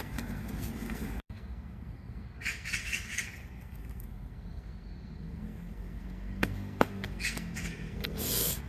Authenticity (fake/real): fake